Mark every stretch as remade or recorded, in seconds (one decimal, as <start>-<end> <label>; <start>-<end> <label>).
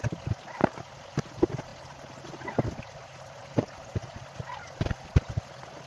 0.0-5.9 recorded